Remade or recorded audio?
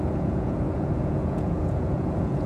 remade